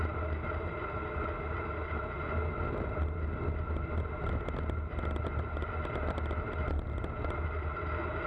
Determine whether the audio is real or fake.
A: real